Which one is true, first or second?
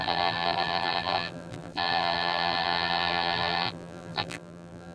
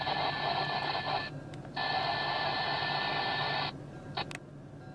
second